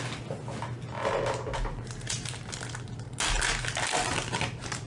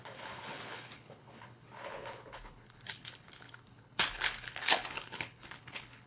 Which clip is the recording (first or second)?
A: first